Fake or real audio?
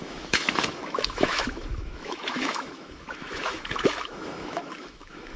fake